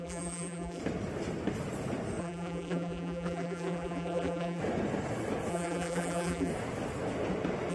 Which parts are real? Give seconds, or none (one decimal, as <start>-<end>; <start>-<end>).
0.8-2.2; 4.6-5.5; 6.5-7.7